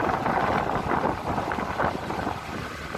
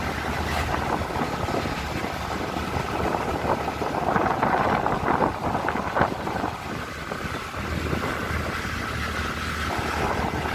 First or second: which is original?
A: second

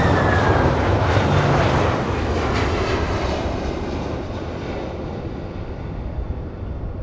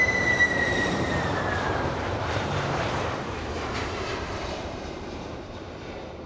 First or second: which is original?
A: first